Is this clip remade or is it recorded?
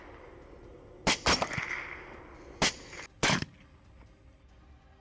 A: recorded